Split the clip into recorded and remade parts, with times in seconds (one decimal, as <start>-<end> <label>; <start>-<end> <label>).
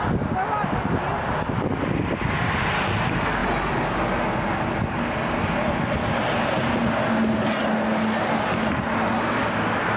0.0-10.0 recorded